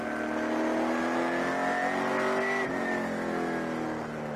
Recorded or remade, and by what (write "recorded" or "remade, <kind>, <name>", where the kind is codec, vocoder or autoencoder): recorded